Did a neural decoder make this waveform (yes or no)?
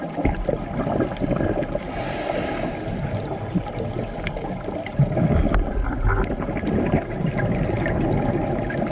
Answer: no